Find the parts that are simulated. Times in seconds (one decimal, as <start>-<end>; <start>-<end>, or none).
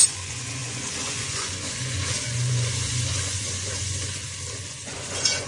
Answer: 0.0-4.2; 4.7-5.5